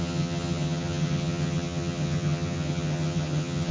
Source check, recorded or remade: remade